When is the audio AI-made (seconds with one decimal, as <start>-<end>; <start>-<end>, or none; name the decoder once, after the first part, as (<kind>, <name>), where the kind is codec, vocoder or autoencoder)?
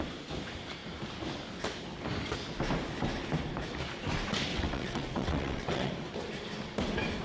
4.5-5.9 (vocoder, WaveNeXt)